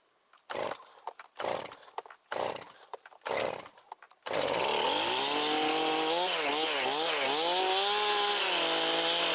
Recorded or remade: recorded